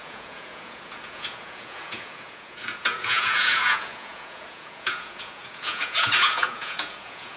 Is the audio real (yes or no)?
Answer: no